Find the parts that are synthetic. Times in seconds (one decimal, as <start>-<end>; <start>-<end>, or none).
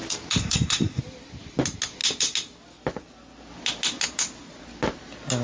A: 0.4-1.0